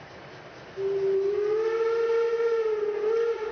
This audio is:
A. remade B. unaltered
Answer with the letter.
B